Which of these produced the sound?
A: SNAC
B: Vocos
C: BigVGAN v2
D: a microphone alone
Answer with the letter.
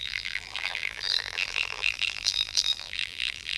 C